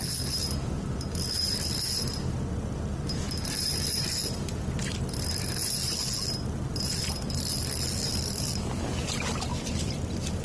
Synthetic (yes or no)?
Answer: no